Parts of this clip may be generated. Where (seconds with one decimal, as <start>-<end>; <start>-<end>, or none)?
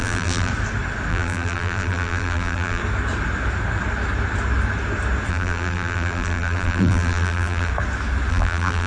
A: 0.0-0.5; 1.1-2.8; 5.3-7.7; 8.3-8.9